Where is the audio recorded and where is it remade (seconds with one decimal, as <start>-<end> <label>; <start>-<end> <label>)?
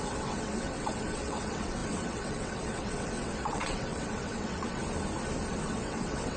0.0-4.8 remade; 4.8-5.5 recorded; 5.5-6.4 remade